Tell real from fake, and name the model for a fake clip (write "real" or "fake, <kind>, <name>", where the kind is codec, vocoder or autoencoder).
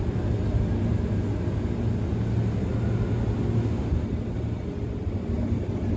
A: real